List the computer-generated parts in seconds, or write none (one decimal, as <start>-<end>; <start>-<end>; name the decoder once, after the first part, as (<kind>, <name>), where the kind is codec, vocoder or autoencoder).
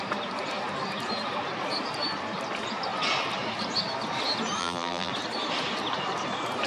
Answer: 4.6-5.1 (vocoder, BigVGAN v2)